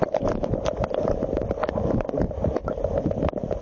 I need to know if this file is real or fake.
real